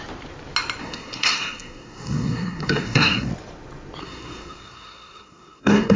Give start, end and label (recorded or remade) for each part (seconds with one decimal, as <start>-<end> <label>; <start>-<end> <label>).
0.0-0.8 recorded; 0.8-3.3 remade; 3.3-4.0 recorded; 4.0-6.0 remade